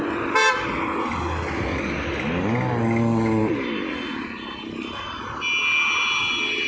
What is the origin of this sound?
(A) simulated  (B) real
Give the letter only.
B